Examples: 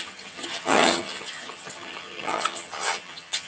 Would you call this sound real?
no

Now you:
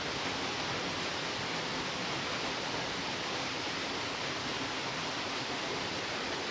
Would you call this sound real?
yes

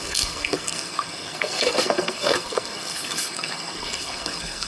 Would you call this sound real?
no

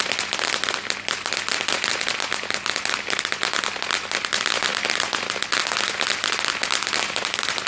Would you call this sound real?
yes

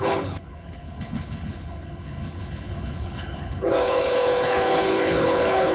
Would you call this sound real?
no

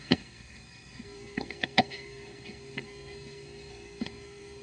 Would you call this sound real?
no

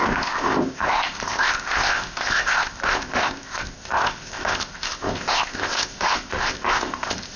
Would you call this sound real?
no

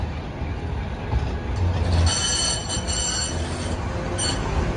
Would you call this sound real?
yes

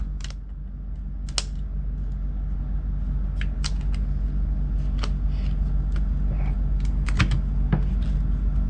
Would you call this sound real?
yes